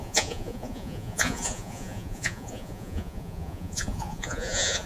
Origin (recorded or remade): remade